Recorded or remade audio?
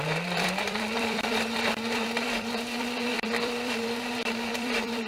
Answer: remade